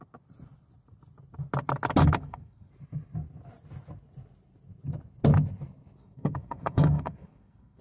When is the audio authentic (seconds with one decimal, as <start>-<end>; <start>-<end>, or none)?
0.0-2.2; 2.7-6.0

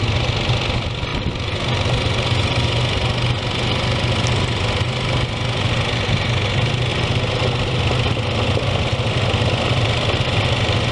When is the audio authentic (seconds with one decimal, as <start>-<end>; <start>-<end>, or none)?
0.0-10.9

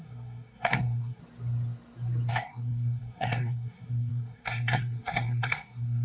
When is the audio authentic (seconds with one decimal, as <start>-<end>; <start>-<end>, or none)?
1.2-2.3

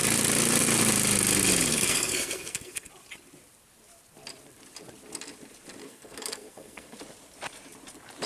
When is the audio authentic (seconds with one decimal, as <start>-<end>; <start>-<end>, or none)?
0.0-1.7; 2.9-5.8; 7.0-8.3

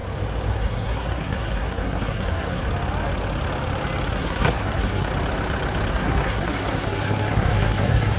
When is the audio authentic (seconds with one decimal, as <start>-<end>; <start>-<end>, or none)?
0.0-0.5; 2.6-4.1; 5.1-5.9

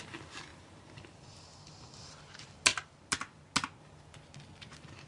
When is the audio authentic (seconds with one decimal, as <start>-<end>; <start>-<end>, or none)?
0.0-5.1

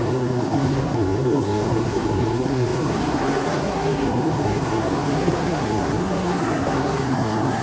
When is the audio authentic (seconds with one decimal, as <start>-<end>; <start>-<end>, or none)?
none

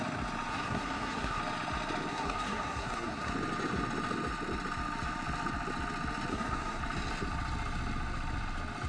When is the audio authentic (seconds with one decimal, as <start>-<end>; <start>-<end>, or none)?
0.0-0.5; 1.4-2.1; 3.3-6.3; 6.8-8.9